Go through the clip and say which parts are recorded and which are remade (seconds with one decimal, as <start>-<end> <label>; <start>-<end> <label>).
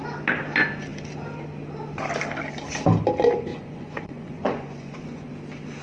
0.0-3.5 recorded; 3.5-5.3 remade; 5.3-5.8 recorded